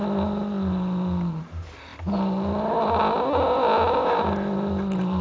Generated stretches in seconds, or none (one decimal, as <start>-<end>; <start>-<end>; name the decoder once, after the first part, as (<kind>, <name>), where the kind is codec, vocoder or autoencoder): none

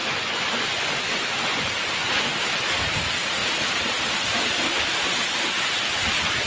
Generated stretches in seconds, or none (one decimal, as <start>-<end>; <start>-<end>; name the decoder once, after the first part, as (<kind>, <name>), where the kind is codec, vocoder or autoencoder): 0.0-2.4 (vocoder, Vocos)

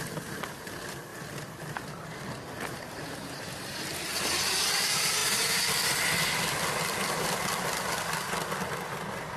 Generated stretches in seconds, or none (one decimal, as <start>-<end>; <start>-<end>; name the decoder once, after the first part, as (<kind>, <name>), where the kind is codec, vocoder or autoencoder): 1.1-3.9 (vocoder, BigVGAN v2)

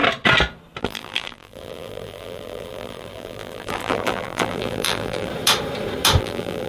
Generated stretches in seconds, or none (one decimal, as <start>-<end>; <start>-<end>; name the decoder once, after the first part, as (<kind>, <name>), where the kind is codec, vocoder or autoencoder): 0.8-5.3 (vocoder, BigVGAN v2); 6.2-6.7

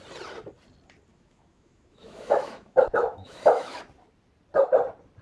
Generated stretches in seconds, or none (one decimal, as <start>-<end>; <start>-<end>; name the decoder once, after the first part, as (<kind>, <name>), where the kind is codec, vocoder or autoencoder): 1.1-3.9 (autoencoder, DAC-VAE)

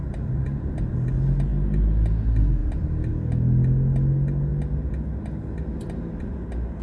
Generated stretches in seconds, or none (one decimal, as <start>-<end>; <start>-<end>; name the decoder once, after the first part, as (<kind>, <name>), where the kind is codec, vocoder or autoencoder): 0.0-0.9 (vocoder, BigVGAN v2); 2.6-3.1

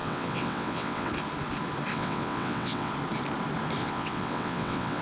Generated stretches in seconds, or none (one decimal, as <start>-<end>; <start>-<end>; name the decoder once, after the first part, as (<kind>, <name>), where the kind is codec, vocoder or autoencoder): 0.0-1.1 (vocoder, WaveNeXt); 1.9-2.9; 3.8-5.0

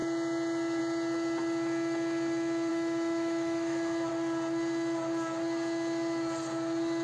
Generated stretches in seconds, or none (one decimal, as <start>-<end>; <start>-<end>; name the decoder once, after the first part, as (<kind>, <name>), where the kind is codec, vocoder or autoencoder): 2.7-4.1 (autoencoder, DAC-VAE)